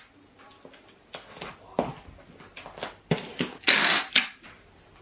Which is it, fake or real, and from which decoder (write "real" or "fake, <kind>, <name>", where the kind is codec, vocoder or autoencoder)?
real